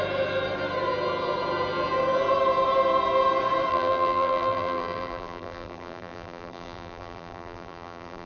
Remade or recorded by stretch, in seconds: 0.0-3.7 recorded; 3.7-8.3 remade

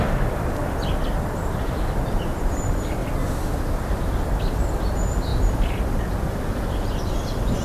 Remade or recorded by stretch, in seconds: 0.0-0.6 remade; 0.6-1.4 recorded; 1.4-3.0 remade; 3.0-4.3 recorded; 4.3-7.6 remade